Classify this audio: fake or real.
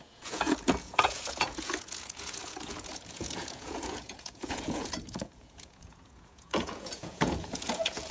fake